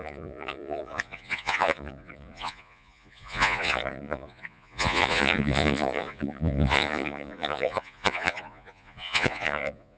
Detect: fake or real fake